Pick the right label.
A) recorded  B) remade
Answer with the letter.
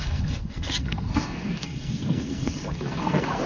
B